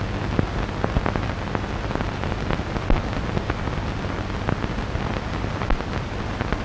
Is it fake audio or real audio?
real